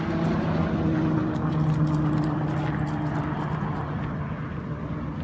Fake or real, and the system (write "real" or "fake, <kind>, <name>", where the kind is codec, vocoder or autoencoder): real